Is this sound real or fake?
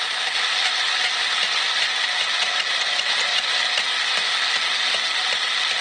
real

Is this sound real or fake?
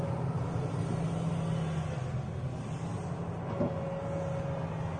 real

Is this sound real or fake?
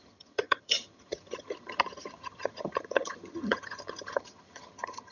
fake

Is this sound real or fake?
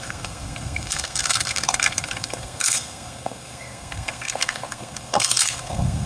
fake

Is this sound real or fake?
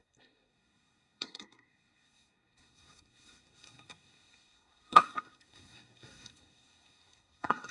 fake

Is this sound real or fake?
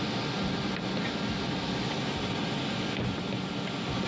real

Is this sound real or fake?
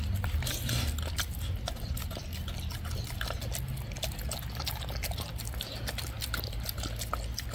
real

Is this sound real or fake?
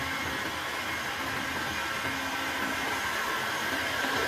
real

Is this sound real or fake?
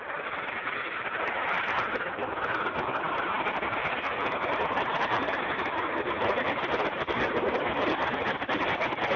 real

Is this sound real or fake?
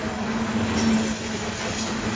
real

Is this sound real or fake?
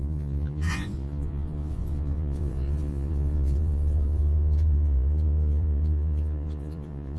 fake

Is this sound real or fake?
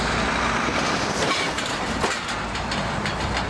fake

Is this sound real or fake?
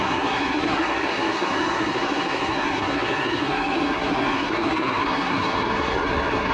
fake